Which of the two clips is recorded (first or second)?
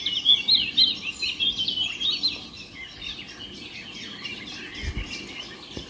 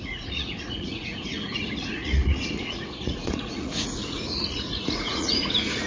first